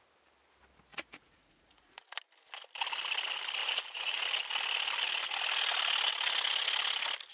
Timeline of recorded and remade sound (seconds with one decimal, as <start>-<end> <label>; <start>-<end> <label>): 0.0-0.9 recorded; 0.9-2.0 remade; 2.0-3.6 recorded; 3.6-4.2 remade; 4.2-7.3 recorded